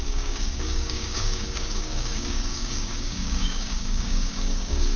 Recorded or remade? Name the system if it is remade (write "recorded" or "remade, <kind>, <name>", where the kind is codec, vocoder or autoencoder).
remade, codec, DAC